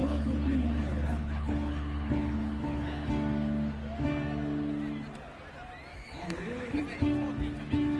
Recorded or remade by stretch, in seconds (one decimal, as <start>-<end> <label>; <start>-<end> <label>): 0.0-3.1 remade; 3.1-5.9 recorded; 5.9-6.8 remade; 6.8-8.0 recorded